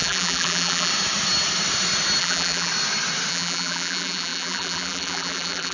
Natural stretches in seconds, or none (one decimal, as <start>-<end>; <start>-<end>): 0.9-2.2; 2.7-3.3